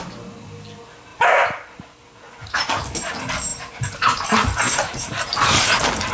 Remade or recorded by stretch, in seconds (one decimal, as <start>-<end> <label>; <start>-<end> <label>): 0.0-1.1 recorded; 1.1-2.7 remade; 2.7-3.5 recorded; 3.5-6.1 remade